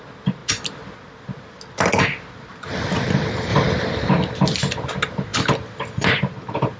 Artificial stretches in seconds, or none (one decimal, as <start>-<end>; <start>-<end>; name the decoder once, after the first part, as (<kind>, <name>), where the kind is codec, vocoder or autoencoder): none